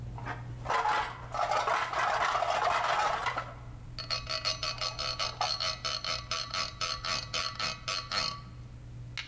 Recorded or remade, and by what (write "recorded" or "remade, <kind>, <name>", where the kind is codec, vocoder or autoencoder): recorded